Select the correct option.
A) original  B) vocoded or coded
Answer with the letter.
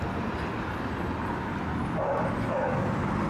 A